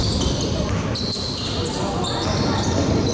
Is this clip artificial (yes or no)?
no